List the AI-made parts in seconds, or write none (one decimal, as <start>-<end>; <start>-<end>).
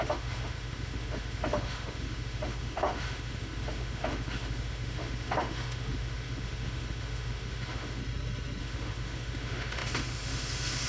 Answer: 0.0-8.0; 8.6-10.9